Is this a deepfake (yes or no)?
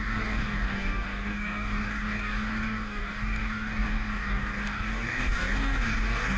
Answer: yes